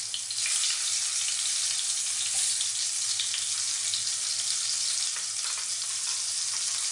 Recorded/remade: recorded